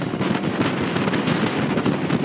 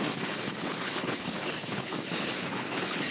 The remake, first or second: second